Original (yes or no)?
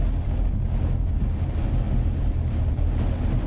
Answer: yes